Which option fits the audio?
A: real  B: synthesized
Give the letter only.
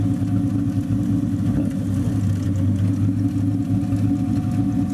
A